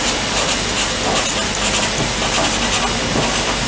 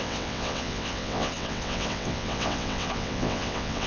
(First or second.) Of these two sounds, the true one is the first